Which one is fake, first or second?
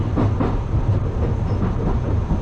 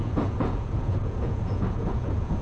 second